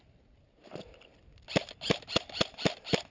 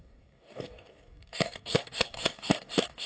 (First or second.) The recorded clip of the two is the first